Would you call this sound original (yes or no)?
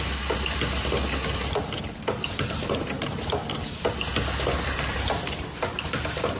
yes